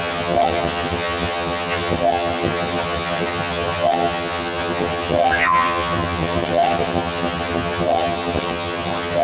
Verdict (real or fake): fake